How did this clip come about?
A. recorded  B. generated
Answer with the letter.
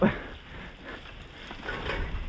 A